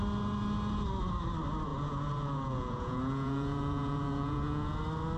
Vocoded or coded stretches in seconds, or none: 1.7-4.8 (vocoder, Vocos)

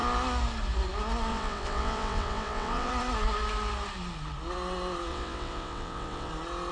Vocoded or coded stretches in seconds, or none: 1.3-2.9 (vocoder, WaveNeXt); 5.1-6.3

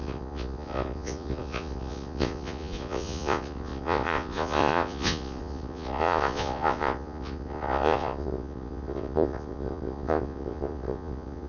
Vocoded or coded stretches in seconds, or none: 0.0-11.5 (vocoder, Vocos)

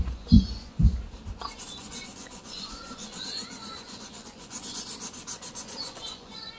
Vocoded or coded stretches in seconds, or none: 0.0-0.8 (vocoder, Vocos); 1.5-4.9; 5.5-6.6

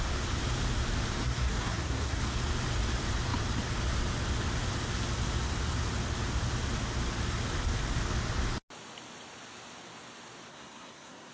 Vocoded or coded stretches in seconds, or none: 1.2-2.2 (codec, SNAC); 10.5-11.3

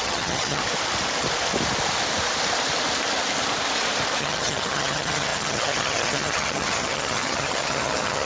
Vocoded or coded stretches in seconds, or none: 0.0-0.6 (vocoder, HiFi-GAN); 4.2-8.3

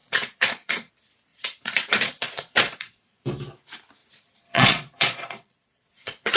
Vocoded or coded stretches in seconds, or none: 0.0-0.9 (vocoder, Vocos); 1.3-3.2; 4.0-6.4

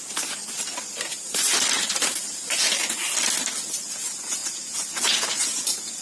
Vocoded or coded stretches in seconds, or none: 0.0-0.4 (vocoder, Vocos); 3.9-6.0